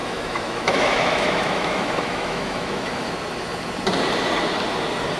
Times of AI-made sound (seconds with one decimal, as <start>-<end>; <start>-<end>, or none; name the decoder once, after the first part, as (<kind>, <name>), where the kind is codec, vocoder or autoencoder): 0.0-3.1 (autoencoder, DAC-VAE)